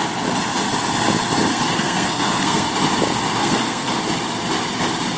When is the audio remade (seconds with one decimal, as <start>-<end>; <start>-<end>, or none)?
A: 1.5-2.7; 3.4-4.0